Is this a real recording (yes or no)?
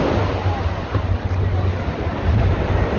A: yes